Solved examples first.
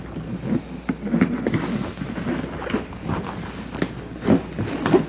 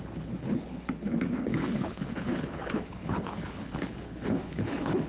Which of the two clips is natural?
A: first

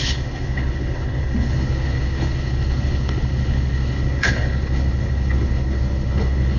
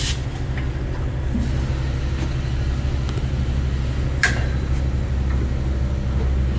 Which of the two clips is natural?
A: second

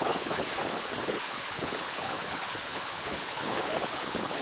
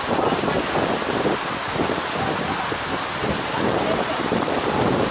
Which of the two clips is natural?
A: second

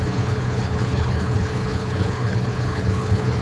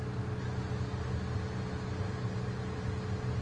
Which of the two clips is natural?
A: second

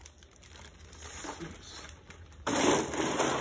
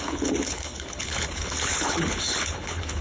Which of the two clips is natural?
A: first